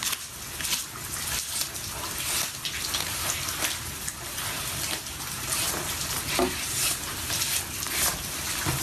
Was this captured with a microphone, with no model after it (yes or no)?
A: yes